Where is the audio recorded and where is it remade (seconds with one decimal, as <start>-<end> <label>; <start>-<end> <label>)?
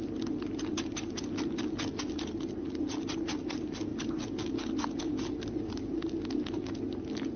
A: 0.0-7.4 recorded